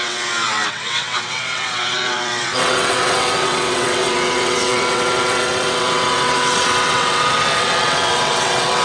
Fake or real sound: fake